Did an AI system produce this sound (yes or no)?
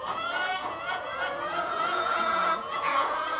yes